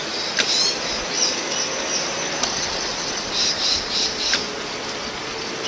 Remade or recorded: recorded